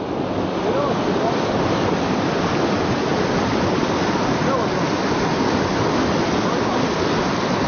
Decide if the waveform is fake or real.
real